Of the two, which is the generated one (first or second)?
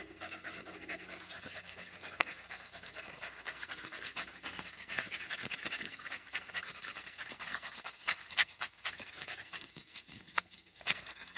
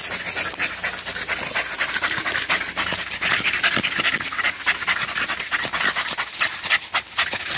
first